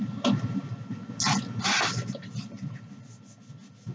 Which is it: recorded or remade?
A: recorded